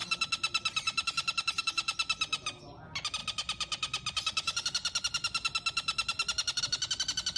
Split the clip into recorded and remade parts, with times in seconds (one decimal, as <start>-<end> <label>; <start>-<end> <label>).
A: 0.0-7.4 recorded